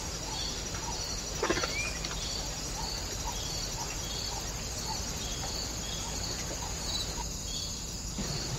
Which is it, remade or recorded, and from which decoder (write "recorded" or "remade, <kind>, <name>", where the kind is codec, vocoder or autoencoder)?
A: recorded